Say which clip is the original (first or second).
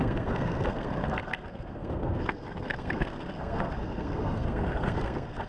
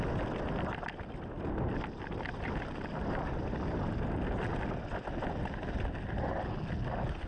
second